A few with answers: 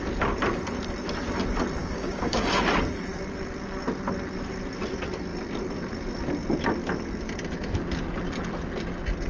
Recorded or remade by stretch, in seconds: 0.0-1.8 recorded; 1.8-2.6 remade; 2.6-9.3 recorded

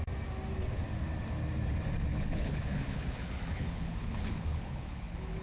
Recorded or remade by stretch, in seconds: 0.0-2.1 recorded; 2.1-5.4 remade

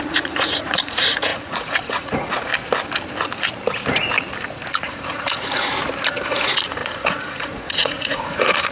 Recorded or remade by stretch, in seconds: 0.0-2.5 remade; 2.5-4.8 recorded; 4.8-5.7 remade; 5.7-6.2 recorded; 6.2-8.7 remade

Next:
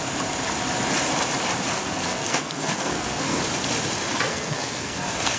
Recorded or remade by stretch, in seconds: 0.0-1.8 recorded; 1.8-3.4 remade; 3.4-4.1 recorded; 4.1-5.4 remade

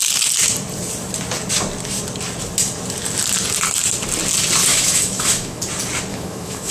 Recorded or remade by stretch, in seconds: 0.0-4.7 recorded; 4.7-5.6 remade; 5.6-6.1 recorded; 6.1-6.7 remade